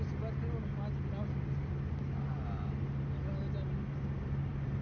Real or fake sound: real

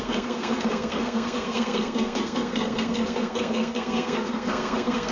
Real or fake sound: fake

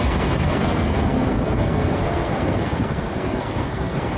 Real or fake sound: fake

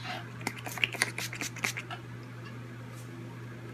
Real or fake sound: real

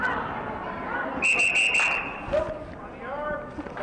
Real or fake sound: real